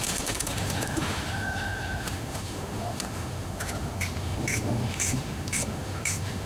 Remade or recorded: remade